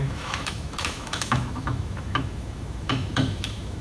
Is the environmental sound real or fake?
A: fake